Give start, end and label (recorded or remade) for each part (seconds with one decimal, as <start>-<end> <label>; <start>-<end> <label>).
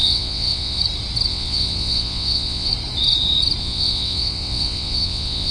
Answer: 0.0-0.8 remade; 0.8-1.3 recorded; 1.3-2.7 remade; 2.7-3.6 recorded; 3.6-5.5 remade